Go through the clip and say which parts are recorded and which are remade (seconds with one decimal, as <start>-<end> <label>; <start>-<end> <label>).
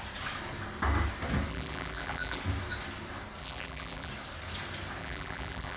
0.0-1.5 recorded; 1.5-2.4 remade; 2.4-3.4 recorded; 3.4-4.1 remade; 4.1-5.0 recorded; 5.0-5.8 remade